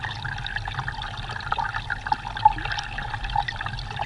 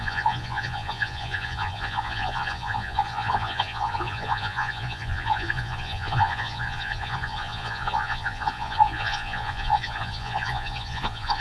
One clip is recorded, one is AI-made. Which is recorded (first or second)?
first